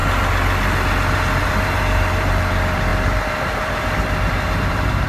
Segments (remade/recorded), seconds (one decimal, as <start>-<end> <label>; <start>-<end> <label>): 0.0-1.4 recorded; 1.4-5.1 remade